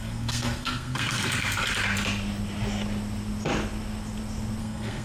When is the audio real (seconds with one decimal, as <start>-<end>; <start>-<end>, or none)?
1.6-4.6